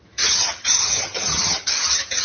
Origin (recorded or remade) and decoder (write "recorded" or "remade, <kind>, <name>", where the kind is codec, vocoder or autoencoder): remade, vocoder, HiFi-GAN